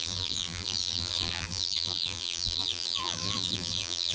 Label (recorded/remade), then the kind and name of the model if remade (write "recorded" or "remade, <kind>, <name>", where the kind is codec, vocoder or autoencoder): remade, vocoder, BigVGAN v2